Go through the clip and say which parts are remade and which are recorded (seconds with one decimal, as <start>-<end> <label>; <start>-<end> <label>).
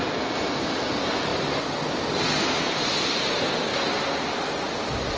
0.0-5.2 recorded